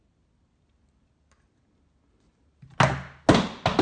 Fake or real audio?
real